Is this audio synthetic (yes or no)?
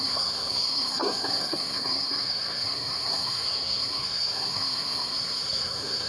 yes